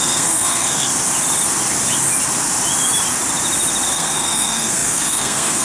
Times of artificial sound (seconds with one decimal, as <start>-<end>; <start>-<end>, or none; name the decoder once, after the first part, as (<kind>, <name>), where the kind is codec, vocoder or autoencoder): 0.0-0.9 (codec, SNAC); 3.9-5.6